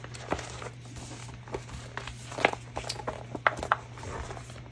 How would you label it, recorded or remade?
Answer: recorded